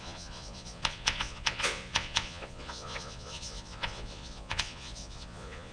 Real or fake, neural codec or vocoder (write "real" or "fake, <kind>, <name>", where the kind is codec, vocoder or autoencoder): fake, vocoder, Vocos